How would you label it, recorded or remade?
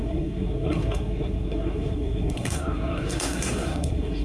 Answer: remade